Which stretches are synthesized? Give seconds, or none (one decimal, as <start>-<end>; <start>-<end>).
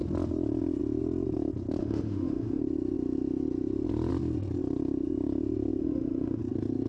1.8-2.6; 5.8-6.4